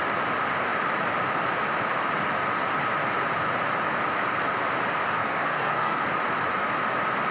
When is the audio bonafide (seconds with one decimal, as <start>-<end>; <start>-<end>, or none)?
0.0-5.1; 6.0-7.3